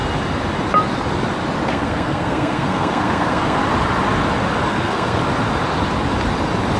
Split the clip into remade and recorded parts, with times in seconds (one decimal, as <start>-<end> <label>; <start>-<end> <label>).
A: 0.0-1.7 recorded; 1.7-3.6 remade; 3.6-4.7 recorded; 4.7-5.2 remade; 5.2-6.8 recorded